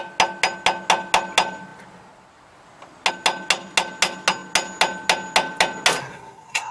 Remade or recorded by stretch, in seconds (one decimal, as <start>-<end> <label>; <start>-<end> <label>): 0.0-6.0 recorded; 6.0-6.7 remade